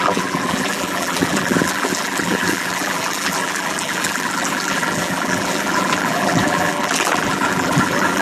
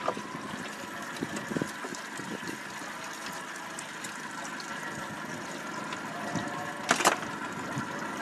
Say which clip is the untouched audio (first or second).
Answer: second